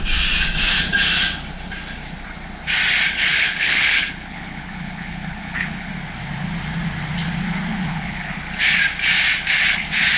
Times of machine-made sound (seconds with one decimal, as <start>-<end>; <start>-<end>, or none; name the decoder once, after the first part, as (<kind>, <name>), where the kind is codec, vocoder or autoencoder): 3.3-5.9 (codec, HILCodec); 7.7-8.3